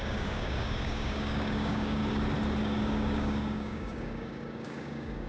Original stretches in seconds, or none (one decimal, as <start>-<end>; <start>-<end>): 2.0-2.6